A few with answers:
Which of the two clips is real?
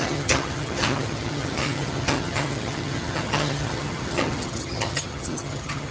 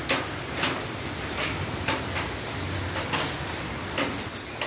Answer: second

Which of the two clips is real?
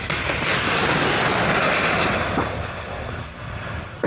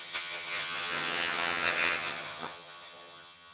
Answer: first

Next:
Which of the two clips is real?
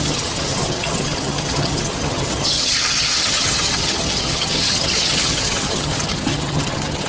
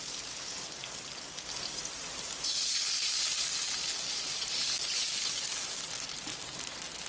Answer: second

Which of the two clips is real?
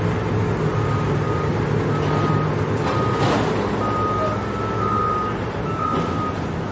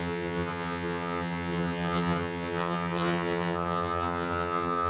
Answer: first